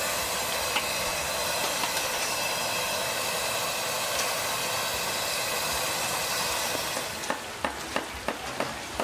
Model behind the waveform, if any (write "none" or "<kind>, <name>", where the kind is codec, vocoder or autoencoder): none